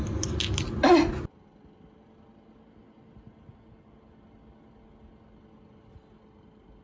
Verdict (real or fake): real